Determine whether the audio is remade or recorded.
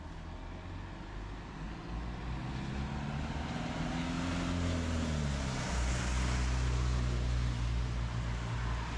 recorded